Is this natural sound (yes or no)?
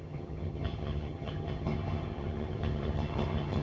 no